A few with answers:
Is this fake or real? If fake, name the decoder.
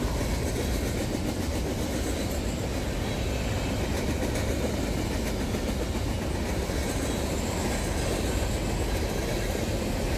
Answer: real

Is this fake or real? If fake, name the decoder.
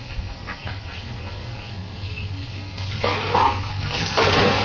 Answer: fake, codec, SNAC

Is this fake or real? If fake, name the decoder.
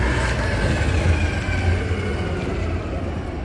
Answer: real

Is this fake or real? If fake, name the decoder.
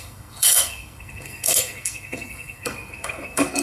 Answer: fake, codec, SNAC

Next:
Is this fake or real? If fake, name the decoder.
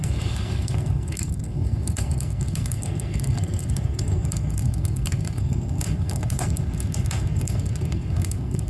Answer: fake, codec, SNAC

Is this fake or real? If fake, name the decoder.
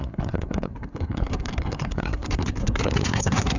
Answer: fake, codec, SNAC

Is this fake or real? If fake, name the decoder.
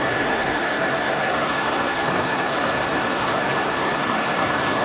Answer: fake, codec, SNAC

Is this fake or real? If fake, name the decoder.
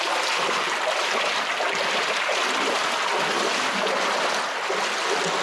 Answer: real